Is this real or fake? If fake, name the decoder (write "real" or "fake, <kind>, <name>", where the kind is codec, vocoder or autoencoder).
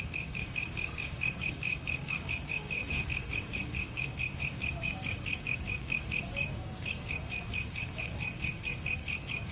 fake, codec, DAC